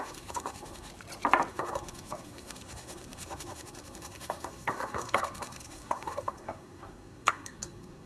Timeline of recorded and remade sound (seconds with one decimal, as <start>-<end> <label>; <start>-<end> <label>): 0.0-0.9 remade; 0.9-1.5 recorded; 1.5-8.1 remade